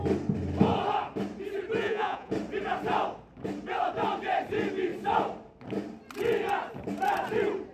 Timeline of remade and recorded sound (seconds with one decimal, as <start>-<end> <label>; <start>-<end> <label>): 0.0-1.8 recorded; 1.8-2.3 remade; 2.3-7.7 recorded